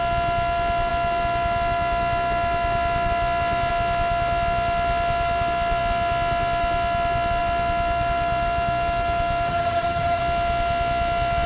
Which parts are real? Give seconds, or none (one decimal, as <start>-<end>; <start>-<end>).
0.0-9.5; 10.2-11.5